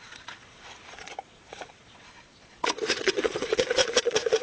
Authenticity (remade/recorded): remade